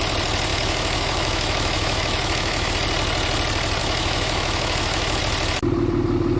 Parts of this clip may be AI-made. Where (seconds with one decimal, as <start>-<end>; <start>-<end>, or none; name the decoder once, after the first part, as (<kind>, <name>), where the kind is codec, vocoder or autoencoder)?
0.5-2.7 (autoencoder, DAC-VAE); 3.8-5.2